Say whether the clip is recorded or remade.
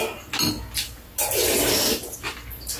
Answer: recorded